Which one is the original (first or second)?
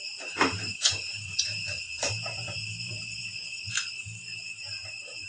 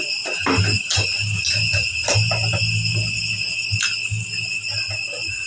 second